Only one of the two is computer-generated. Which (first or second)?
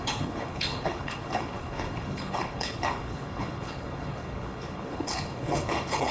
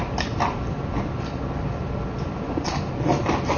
first